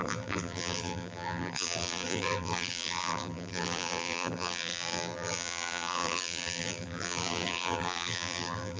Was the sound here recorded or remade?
remade